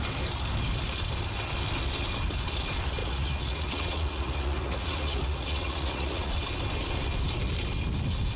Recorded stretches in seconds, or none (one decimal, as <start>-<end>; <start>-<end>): 0.0-3.0; 6.3-8.4